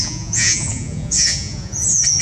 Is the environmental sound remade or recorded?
remade